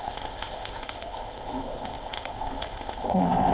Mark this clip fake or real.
fake